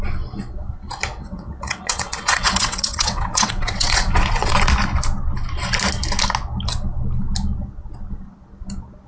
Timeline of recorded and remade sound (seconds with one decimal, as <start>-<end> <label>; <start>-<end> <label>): 0.0-1.2 recorded; 1.2-4.5 remade; 4.5-9.1 recorded